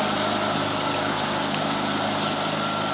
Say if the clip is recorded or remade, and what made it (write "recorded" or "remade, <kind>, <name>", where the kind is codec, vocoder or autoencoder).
recorded